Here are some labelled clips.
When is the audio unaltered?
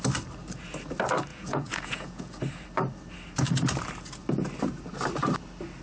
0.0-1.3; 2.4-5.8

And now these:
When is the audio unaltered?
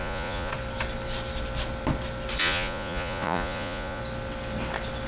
0.5-2.4; 4.0-5.1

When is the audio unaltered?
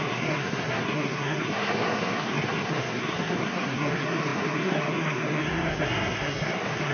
none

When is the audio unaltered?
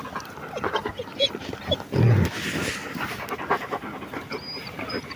0.0-5.2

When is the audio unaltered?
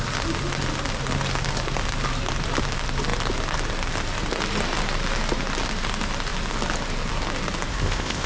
0.0-7.7